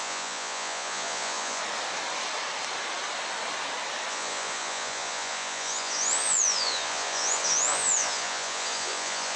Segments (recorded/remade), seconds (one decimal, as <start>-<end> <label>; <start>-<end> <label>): 0.0-1.6 remade; 1.6-4.1 recorded; 4.1-9.4 remade